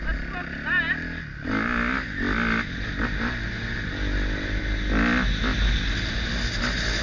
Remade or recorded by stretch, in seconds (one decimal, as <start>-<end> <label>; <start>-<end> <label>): 0.0-7.0 recorded